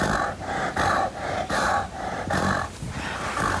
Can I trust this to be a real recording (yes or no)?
yes